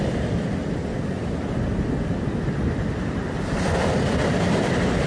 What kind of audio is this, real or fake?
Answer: real